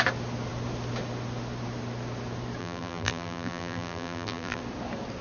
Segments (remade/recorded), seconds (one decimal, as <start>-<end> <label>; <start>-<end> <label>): 0.0-2.6 recorded; 2.6-4.6 remade; 4.6-5.2 recorded